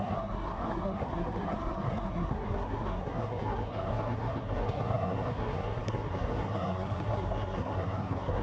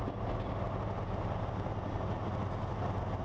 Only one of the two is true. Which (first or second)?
second